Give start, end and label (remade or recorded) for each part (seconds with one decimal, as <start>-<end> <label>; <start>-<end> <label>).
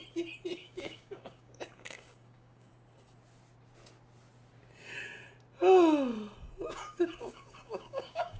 0.0-0.6 recorded; 0.6-2.7 remade; 2.7-6.6 recorded; 6.6-8.4 remade